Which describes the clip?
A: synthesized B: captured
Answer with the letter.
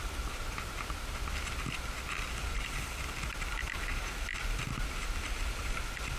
B